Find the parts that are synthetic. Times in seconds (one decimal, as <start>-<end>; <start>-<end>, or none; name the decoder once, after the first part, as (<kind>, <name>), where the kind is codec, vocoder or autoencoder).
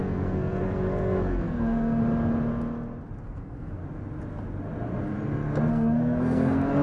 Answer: 0.0-2.0 (codec, SNAC); 3.2-3.8; 5.7-6.8